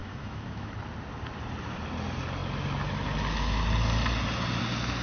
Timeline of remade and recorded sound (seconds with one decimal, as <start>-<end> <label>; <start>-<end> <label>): 0.0-0.7 remade; 0.7-5.0 recorded